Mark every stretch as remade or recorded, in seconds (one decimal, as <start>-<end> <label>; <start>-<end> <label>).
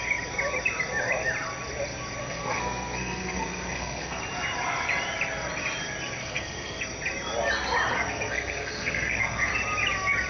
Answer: 0.0-2.2 recorded; 2.2-4.2 remade; 4.2-6.2 recorded; 6.2-6.8 remade; 6.8-7.9 recorded; 7.9-9.5 remade; 9.5-10.3 recorded